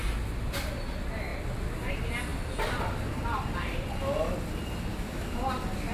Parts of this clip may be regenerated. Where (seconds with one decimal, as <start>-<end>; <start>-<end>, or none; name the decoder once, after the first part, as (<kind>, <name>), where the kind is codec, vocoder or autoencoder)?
4.9-5.5 (autoencoder, DAC-VAE)

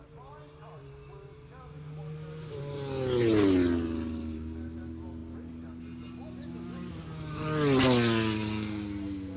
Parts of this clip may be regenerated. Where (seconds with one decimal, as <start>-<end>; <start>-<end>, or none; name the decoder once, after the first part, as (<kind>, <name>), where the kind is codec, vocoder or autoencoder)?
none

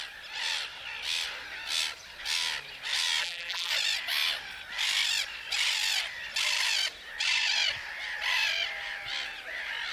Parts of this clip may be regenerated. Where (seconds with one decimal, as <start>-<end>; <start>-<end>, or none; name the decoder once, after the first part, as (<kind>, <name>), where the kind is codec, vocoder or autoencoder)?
3.2-3.7 (vocoder, BigVGAN v2)

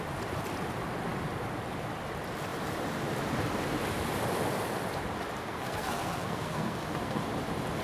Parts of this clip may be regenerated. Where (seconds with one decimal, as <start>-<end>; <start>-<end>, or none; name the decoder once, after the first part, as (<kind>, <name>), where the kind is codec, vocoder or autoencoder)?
5.4-7.2 (codec, SNAC)

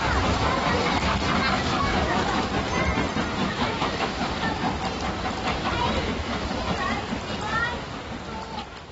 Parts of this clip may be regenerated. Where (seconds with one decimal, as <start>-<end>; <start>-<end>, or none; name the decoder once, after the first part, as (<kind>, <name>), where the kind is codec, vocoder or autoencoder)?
1.7-2.5 (autoencoder, DAC-VAE); 3.4-4.2; 6.0-6.6

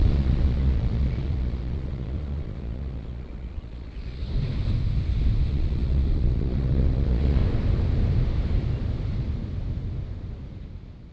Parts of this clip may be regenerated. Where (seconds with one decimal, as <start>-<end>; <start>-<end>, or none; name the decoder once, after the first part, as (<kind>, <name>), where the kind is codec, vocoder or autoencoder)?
0.0-4.2 (vocoder, Vocos); 5.5-7.4

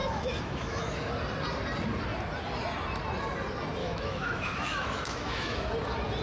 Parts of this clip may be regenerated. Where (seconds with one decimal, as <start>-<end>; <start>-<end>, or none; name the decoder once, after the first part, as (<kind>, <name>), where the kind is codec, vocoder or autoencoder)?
0.0-1.1 (autoencoder, DAC-VAE); 3.8-5.7

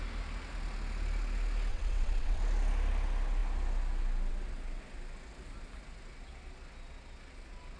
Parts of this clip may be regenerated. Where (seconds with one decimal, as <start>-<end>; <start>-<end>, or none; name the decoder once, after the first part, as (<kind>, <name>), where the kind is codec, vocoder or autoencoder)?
1.7-2.4 (vocoder, WaveNeXt)